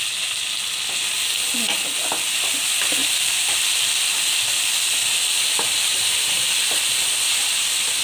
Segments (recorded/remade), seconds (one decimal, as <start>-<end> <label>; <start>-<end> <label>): 0.0-3.0 recorded; 3.0-3.6 remade; 3.6-8.0 recorded